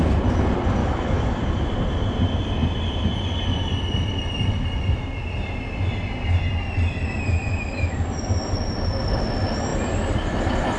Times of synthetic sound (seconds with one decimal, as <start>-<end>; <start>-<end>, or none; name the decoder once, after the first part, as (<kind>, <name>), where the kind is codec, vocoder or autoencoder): 0.8-1.4 (autoencoder, DAC-VAE)